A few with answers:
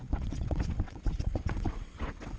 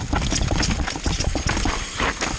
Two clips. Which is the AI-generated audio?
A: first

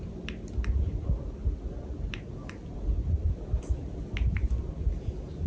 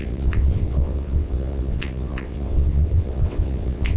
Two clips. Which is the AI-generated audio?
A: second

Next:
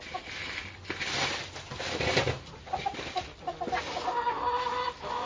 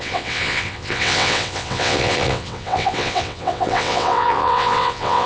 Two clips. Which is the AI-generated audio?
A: second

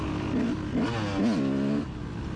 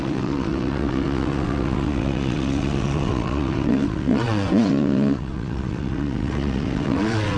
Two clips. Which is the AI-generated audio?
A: second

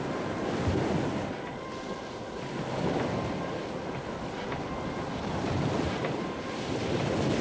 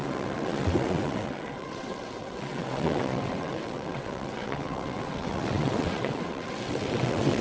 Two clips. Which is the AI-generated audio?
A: second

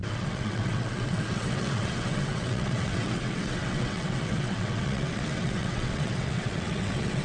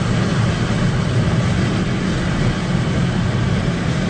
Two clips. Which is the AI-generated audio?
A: first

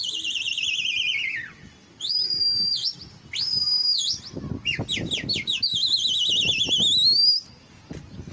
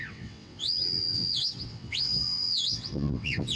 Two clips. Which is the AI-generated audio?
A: second